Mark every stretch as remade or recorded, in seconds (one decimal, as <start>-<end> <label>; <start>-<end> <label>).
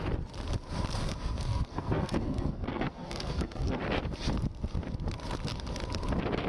0.0-1.0 recorded; 1.0-3.8 remade; 3.8-6.5 recorded